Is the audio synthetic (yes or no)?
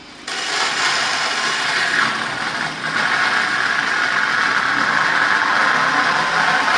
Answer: no